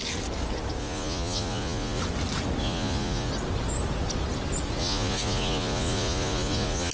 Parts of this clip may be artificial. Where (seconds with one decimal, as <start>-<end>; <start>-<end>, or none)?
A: 0.8-2.0; 2.6-3.3; 4.8-6.9